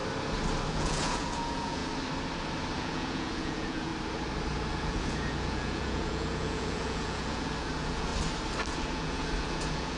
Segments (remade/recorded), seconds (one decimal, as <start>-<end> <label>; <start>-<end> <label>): 0.0-0.7 recorded; 0.7-1.8 remade; 1.8-2.8 recorded; 2.8-3.9 remade; 3.9-4.7 recorded; 4.7-8.1 remade; 8.1-8.7 recorded; 8.7-10.0 remade